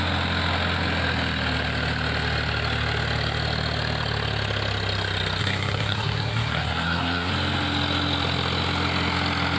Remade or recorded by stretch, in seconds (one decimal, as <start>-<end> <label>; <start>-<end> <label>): 0.0-5.4 recorded; 5.4-7.3 remade; 7.3-9.6 recorded

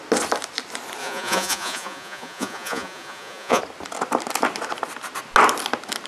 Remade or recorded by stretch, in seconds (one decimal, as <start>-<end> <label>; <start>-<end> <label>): 0.0-1.0 recorded; 1.0-3.6 remade; 3.6-6.1 recorded

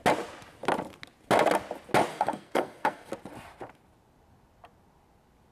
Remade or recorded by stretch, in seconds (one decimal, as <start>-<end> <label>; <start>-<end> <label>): 0.0-2.1 recorded; 2.1-3.1 remade; 3.1-5.5 recorded

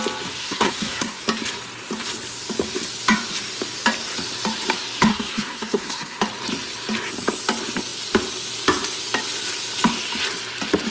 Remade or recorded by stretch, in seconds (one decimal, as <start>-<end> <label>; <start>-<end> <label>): 0.0-0.4 recorded; 0.4-1.2 remade; 1.2-5.1 recorded; 5.1-6.2 remade; 6.2-10.9 recorded